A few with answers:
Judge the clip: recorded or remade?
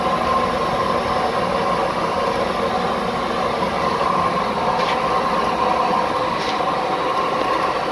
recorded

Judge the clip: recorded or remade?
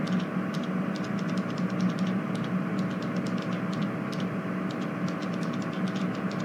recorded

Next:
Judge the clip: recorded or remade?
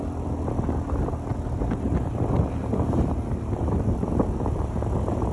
recorded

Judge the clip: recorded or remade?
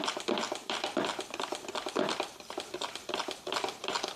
remade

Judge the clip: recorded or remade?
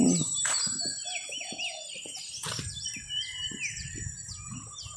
recorded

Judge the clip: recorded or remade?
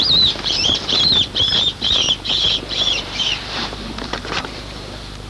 remade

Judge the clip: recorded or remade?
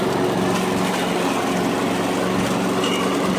recorded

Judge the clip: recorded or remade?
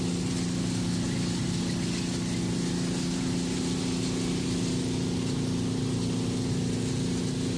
recorded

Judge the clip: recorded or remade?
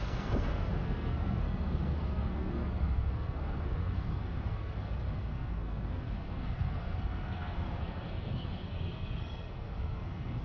remade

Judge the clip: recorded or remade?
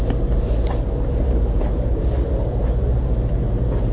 remade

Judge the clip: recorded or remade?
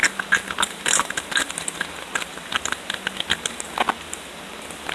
recorded